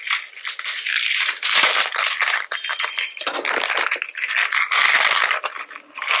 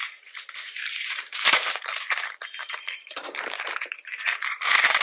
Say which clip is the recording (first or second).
first